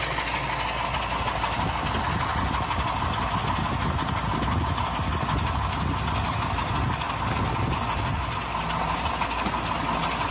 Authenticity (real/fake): real